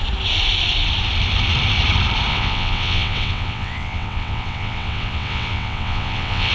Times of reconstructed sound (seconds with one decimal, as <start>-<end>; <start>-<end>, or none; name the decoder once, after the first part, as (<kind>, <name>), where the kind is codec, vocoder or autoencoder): 2.3-6.5 (vocoder, WaveNeXt)